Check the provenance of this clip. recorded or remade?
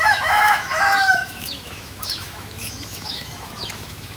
remade